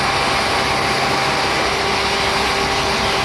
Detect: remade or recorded recorded